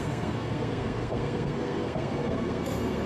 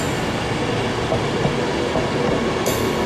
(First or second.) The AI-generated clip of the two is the first